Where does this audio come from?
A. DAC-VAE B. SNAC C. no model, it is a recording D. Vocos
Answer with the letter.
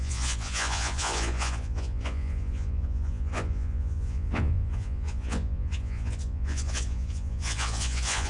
D